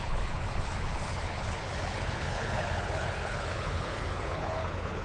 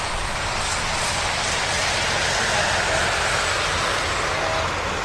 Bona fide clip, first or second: second